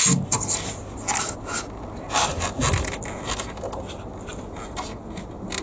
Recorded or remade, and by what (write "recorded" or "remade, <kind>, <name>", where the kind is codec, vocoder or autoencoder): recorded